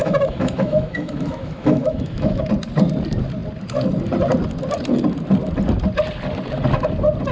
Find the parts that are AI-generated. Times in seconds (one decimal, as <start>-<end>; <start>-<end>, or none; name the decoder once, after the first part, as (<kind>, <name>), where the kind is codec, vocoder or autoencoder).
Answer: 0.0-2.4 (autoencoder, DAC-VAE)